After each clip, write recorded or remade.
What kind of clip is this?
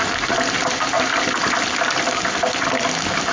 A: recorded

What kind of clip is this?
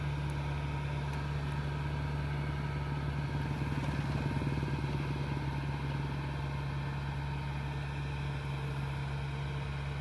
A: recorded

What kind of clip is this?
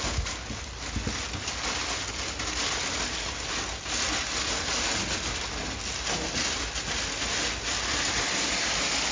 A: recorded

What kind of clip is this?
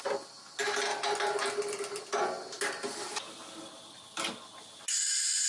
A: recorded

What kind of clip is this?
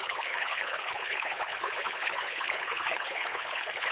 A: remade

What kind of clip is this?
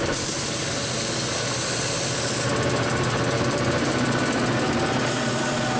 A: recorded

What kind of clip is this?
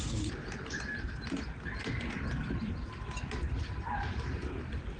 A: recorded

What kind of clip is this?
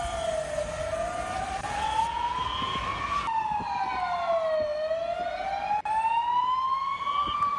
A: recorded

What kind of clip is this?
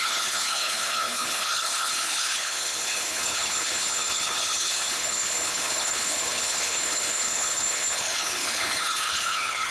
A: remade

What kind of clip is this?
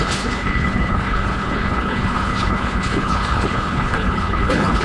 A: remade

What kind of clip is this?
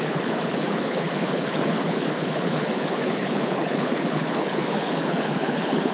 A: remade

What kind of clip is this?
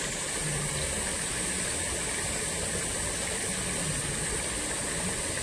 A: recorded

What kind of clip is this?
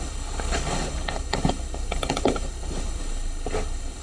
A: remade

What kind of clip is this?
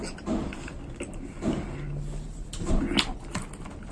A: recorded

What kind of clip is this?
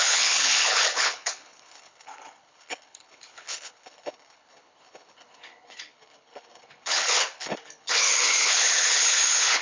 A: remade